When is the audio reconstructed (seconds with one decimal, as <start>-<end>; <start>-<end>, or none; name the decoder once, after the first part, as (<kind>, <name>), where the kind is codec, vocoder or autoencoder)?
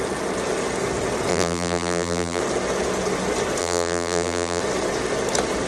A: 1.3-2.4 (vocoder, BigVGAN v2); 3.6-4.6